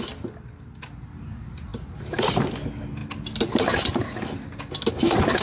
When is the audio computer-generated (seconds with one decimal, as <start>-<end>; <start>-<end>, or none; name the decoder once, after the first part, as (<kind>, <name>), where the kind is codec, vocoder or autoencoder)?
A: 1.7-2.3 (vocoder, BigVGAN v2)